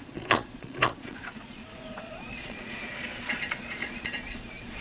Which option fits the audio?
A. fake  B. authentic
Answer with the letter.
A